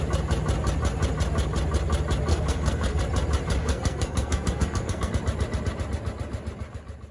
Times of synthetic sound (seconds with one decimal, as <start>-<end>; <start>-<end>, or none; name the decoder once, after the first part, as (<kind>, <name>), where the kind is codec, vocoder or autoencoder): 2.3-3.0 (codec, SNAC); 3.6-5.1